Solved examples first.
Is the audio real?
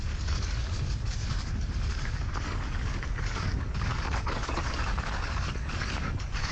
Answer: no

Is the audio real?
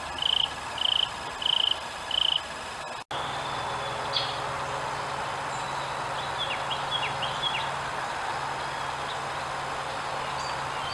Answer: yes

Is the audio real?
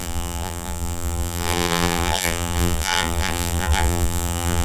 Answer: no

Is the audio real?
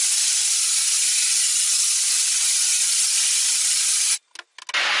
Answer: yes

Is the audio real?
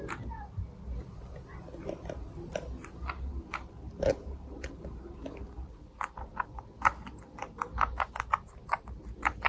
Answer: yes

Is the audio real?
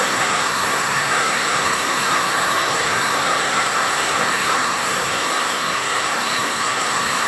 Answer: no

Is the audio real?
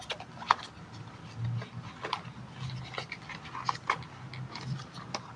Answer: yes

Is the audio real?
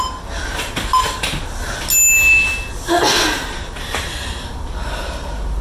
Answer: yes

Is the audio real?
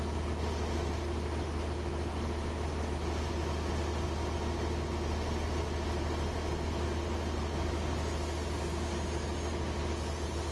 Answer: yes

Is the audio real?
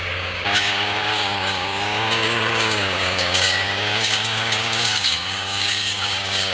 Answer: no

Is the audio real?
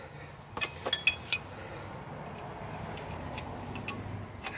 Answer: yes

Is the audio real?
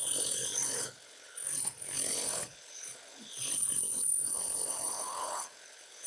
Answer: no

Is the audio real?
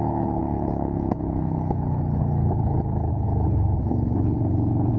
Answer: no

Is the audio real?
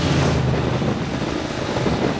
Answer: yes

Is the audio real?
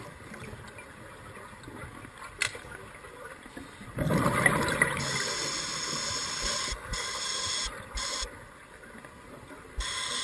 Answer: yes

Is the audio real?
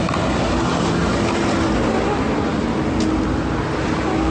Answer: yes